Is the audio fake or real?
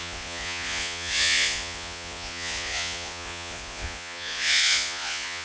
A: fake